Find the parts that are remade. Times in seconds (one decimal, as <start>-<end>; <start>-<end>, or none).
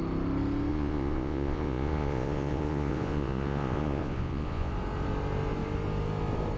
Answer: 0.7-4.7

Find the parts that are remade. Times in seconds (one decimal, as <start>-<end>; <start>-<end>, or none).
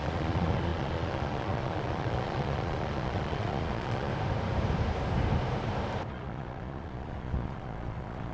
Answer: 0.0-4.1; 6.1-8.3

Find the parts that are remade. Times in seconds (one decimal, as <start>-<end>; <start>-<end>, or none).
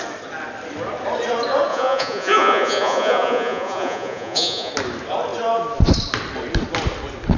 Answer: 1.7-4.7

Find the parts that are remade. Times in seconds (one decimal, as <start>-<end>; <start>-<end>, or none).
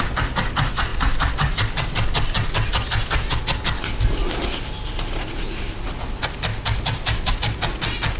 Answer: none